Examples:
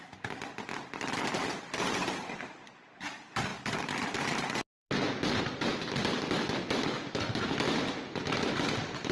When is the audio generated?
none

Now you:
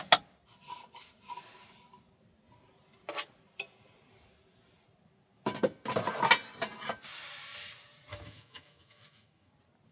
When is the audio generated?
8.1-9.5

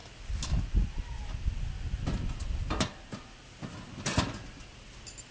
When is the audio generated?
none

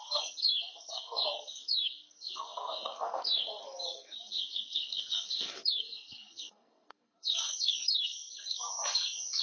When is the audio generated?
0.0-9.4

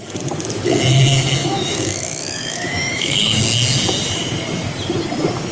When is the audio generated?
1.4-3.4